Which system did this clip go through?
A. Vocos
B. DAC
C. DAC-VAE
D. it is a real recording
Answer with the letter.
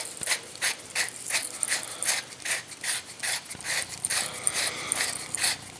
D